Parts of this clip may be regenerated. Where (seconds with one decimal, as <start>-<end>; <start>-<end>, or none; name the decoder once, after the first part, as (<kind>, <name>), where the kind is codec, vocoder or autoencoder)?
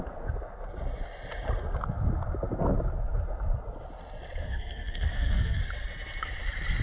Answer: 4.4-5.6 (codec, SNAC)